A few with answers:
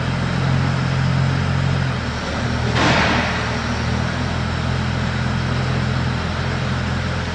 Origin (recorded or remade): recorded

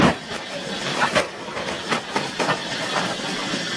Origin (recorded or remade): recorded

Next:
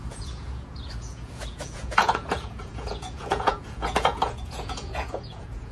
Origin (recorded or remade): remade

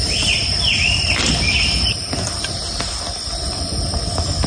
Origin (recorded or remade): recorded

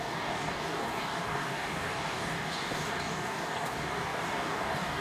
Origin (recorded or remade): remade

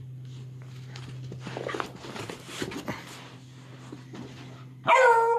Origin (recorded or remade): recorded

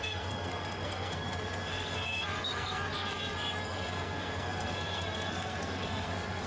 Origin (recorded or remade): remade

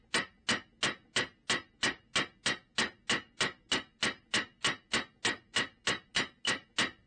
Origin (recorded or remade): recorded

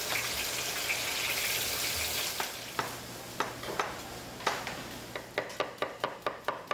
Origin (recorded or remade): recorded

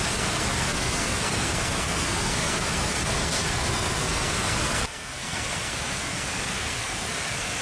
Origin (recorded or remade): remade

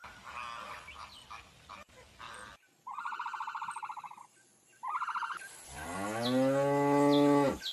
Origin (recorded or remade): recorded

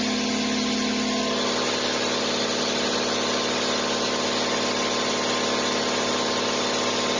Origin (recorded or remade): recorded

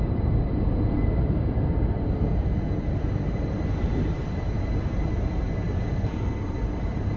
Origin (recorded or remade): remade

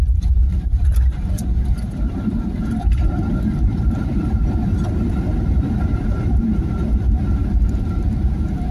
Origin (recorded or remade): remade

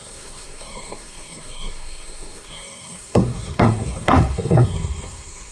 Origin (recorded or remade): remade